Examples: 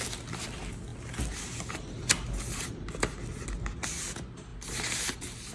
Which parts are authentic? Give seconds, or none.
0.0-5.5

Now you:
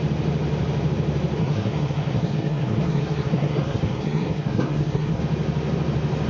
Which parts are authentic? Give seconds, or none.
0.0-1.4; 5.2-6.3

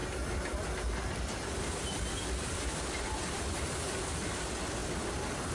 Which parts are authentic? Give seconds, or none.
0.0-5.5

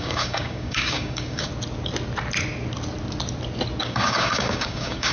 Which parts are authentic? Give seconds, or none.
1.5-3.8

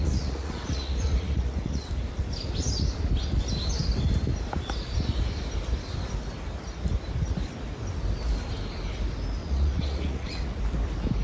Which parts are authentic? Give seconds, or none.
1.9-9.4; 10.6-11.2

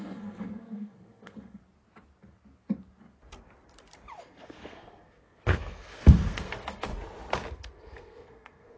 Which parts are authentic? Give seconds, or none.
1.6-4.2; 6.9-7.5

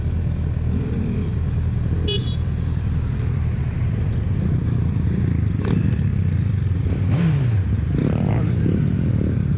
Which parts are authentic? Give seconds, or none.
6.1-8.6